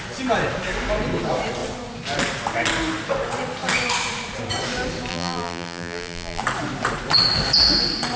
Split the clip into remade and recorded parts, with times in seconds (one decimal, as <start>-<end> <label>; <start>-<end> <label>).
0.0-5.1 recorded; 5.1-6.4 remade; 6.4-8.2 recorded